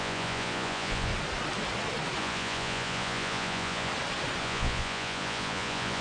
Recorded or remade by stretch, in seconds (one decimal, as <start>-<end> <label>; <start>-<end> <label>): 0.0-1.1 remade; 1.1-2.2 recorded; 2.2-3.9 remade; 3.9-4.4 recorded; 4.4-6.0 remade